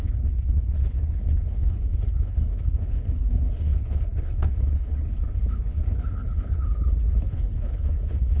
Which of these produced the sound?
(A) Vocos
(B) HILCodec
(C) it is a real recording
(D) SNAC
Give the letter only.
B